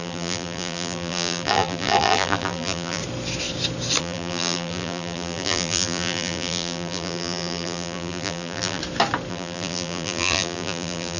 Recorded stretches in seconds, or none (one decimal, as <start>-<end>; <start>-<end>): 3.0-4.0; 8.8-9.3